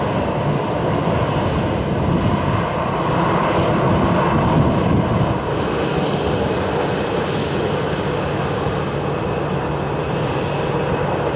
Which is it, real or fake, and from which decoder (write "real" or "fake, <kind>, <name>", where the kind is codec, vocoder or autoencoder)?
real